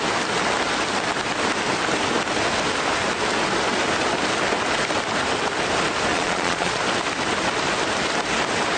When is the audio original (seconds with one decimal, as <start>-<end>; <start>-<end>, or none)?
0.0-6.1; 6.8-8.8